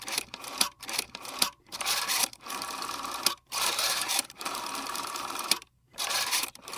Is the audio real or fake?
fake